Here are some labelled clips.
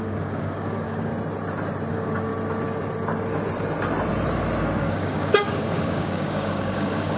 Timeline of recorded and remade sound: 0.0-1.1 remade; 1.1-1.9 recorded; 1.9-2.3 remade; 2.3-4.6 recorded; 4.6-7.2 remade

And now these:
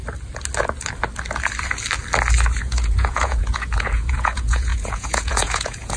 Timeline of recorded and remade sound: 0.0-2.6 recorded; 2.6-6.0 remade

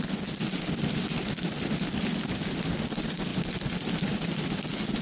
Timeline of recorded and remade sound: 0.0-5.0 recorded

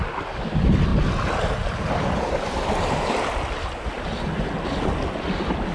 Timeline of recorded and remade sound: 0.0-5.7 recorded

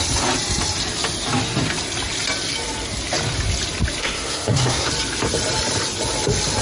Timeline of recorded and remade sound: 0.0-4.0 recorded; 4.0-4.9 remade; 4.9-6.6 recorded

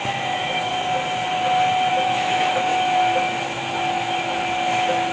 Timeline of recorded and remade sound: 0.0-0.7 remade; 0.7-1.9 recorded; 1.9-5.1 remade